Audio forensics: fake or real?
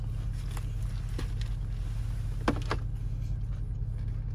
real